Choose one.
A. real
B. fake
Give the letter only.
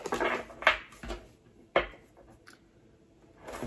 A